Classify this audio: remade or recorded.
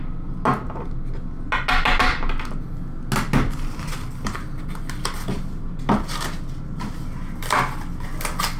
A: recorded